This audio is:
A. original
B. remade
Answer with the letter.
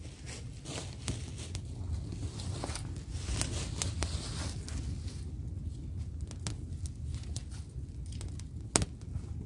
A